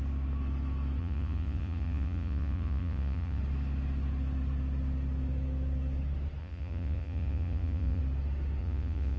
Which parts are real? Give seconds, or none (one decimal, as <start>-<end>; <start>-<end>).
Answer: 0.0-1.0; 3.4-6.4; 8.0-8.6